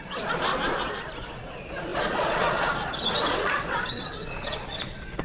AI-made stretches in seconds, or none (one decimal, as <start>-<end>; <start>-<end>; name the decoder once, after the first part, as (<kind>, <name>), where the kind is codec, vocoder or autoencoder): 0.0-0.5 (vocoder, Vocos); 1.2-5.2